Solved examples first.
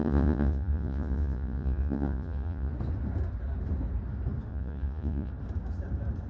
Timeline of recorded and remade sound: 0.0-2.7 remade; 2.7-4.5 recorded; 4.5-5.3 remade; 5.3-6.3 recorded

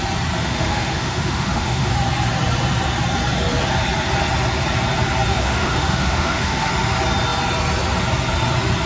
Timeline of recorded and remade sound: 0.0-0.4 recorded; 0.4-1.9 remade; 1.9-5.3 recorded; 5.3-6.7 remade; 6.7-8.9 recorded

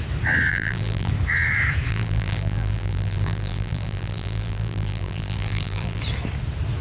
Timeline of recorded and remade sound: 0.0-0.5 recorded; 0.5-1.1 remade; 1.1-1.9 recorded; 1.9-6.0 remade; 6.0-6.8 recorded

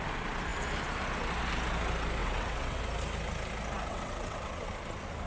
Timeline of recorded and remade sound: 0.0-2.2 recorded; 2.2-2.8 remade; 2.8-3.9 recorded; 3.9-4.7 remade; 4.7-5.3 recorded

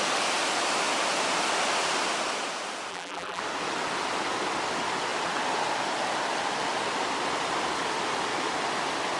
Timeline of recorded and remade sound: 0.0-2.9 recorded; 2.9-3.4 remade; 3.4-9.2 recorded

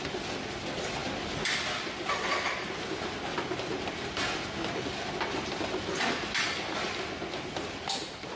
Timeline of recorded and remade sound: 0.0-8.4 recorded